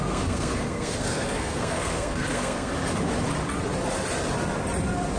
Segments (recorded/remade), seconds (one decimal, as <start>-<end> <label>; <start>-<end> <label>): 0.0-2.7 remade; 2.7-5.2 recorded